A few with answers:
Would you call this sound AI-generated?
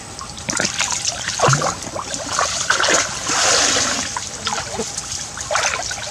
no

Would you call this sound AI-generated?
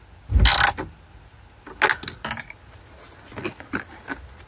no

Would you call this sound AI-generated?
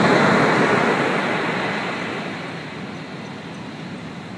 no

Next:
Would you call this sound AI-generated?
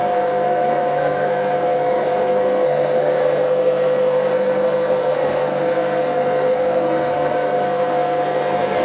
yes